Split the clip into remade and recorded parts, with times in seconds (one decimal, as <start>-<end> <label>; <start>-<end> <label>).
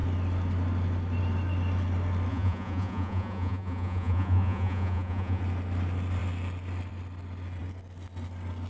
0.0-2.3 recorded; 2.3-5.4 remade; 5.4-8.7 recorded